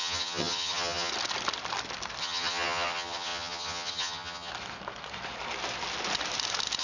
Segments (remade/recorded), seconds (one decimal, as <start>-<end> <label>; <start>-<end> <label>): 0.0-1.1 remade; 1.1-2.2 recorded; 2.2-4.5 remade; 4.5-6.8 recorded